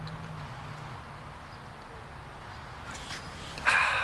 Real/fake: real